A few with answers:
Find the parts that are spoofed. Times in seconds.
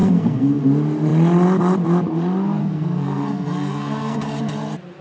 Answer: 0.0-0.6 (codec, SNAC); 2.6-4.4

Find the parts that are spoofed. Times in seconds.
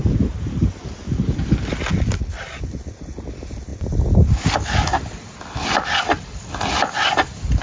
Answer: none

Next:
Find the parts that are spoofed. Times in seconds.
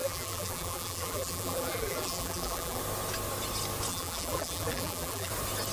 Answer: 0.0-2.8 (vocoder, BigVGAN v2); 3.9-5.3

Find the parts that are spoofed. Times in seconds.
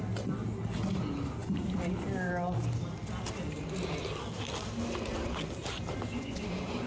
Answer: none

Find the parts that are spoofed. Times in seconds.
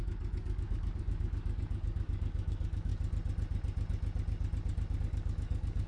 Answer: 0.0-2.9 (codec, DAC); 5.0-5.9